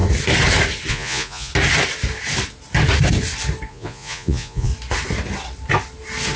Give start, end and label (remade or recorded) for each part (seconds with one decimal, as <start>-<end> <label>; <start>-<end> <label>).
0.0-0.9 recorded; 0.9-1.5 remade; 1.5-3.7 recorded; 3.7-4.7 remade; 4.7-6.4 recorded